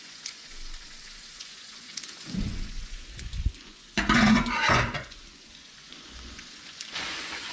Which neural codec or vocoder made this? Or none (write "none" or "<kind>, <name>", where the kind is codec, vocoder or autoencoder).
vocoder, Vocos